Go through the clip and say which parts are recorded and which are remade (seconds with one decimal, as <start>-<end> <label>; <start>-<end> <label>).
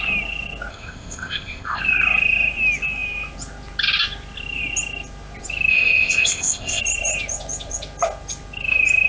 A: 0.0-0.7 recorded; 0.7-1.8 remade; 1.8-5.7 recorded; 5.7-6.8 remade; 6.8-9.1 recorded